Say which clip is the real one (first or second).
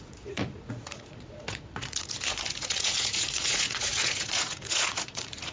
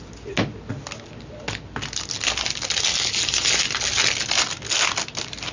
second